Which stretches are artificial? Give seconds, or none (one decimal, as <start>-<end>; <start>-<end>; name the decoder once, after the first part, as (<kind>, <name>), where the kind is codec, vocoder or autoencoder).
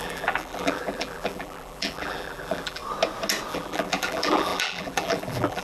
0.0-2.8 (vocoder, BigVGAN v2); 3.5-5.6